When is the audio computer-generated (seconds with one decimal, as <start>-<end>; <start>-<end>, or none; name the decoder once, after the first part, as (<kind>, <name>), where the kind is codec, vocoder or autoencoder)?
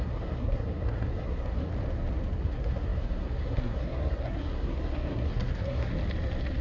0.0-1.7 (codec, SNAC); 2.4-5.9